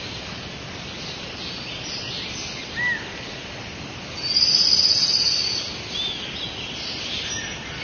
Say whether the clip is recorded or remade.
recorded